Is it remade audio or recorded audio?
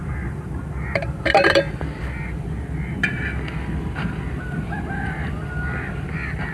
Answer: remade